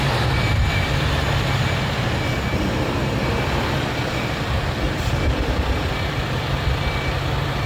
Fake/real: fake